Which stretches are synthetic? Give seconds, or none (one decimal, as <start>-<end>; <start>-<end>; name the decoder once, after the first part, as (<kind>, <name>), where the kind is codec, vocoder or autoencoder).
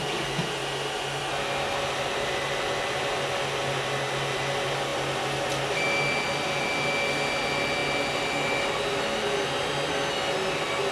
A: none